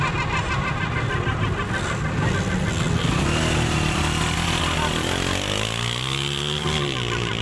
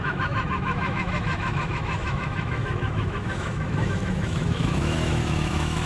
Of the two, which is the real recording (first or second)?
first